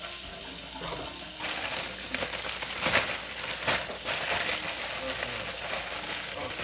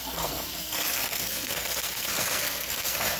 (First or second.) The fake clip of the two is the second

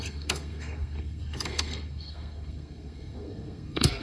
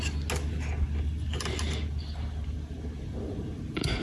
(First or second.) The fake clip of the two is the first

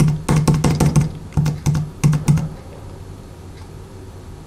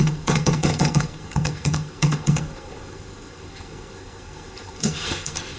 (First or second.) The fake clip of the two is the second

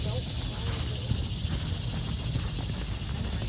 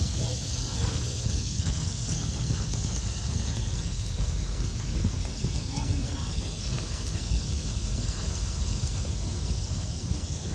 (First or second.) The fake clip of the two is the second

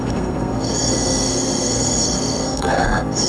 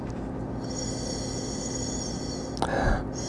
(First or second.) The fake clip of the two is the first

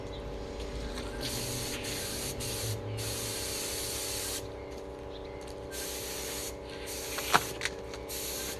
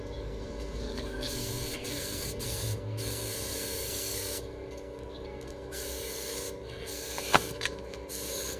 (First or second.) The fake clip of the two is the second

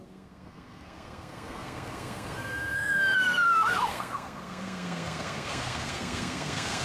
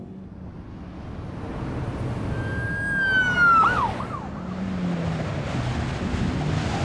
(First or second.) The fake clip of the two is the first